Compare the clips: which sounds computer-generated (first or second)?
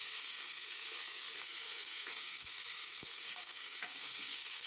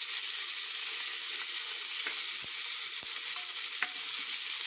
first